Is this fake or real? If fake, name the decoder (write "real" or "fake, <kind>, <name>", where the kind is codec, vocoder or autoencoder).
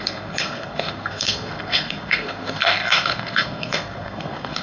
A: fake, codec, SNAC